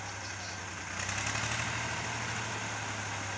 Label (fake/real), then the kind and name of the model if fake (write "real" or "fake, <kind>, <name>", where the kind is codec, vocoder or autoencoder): real